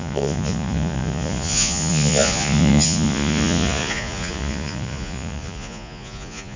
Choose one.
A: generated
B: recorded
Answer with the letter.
A